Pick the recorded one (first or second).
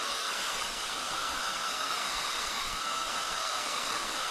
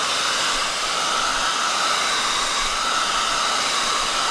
second